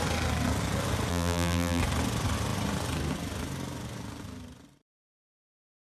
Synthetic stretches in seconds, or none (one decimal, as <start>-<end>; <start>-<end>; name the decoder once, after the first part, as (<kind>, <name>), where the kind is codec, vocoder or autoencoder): 1.1-1.8 (vocoder, BigVGAN v2)